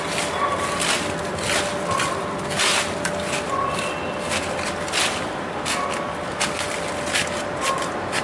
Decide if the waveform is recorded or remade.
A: recorded